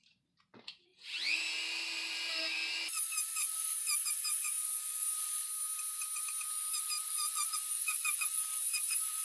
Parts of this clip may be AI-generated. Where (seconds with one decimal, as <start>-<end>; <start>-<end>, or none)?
0.0-5.4; 6.5-9.2